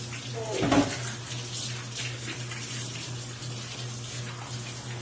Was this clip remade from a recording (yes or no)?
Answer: no